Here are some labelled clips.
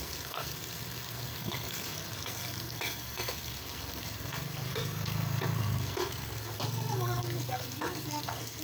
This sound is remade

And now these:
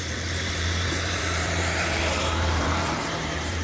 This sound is remade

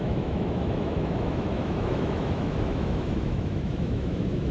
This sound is remade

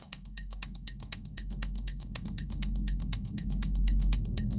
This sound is remade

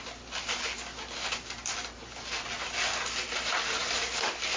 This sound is recorded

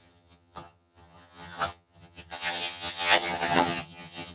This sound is remade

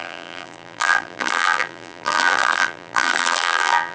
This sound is remade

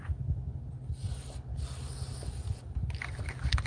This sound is recorded